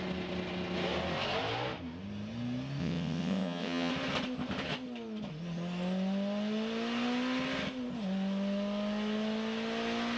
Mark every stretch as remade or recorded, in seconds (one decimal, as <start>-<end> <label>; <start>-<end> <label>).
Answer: 0.0-2.8 recorded; 2.8-3.9 remade; 3.9-10.2 recorded